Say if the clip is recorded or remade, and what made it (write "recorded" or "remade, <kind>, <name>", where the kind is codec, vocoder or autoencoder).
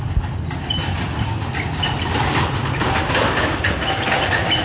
recorded